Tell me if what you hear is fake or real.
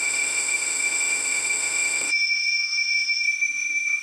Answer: fake